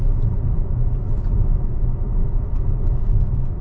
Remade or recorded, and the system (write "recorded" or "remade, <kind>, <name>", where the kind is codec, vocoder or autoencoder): recorded